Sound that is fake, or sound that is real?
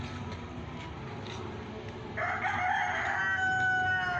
real